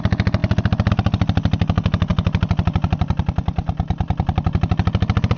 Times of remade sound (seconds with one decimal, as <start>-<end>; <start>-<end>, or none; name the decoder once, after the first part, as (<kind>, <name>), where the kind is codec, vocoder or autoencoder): none

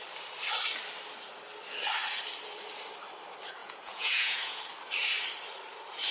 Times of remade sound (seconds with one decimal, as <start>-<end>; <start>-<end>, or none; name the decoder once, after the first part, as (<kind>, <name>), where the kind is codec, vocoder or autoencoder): 3.6-4.6 (vocoder, Vocos)